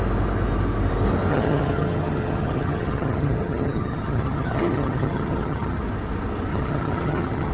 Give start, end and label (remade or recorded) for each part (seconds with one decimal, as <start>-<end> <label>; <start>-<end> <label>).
0.0-1.3 recorded; 1.3-5.8 remade; 5.8-6.5 recorded; 6.5-7.5 remade